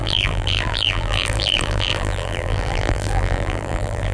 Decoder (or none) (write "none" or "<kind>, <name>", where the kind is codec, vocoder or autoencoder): vocoder, BigVGAN v2